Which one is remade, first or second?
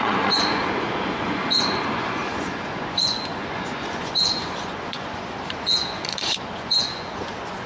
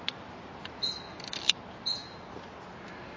first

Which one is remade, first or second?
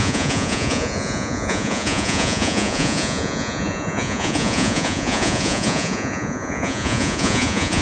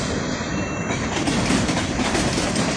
first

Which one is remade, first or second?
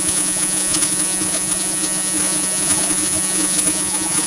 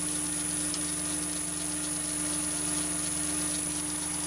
first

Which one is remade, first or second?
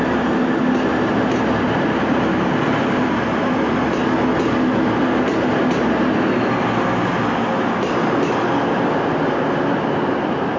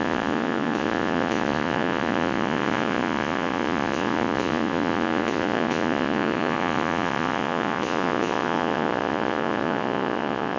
second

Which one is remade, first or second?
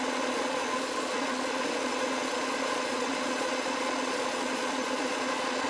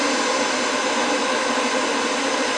first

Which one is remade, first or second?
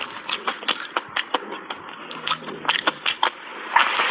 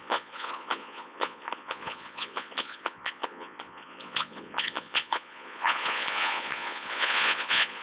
second